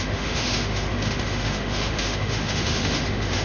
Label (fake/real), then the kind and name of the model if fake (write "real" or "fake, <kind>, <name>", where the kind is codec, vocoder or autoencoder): fake, autoencoder, DAC-VAE